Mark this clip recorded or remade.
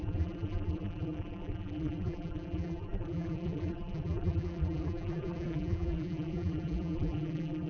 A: remade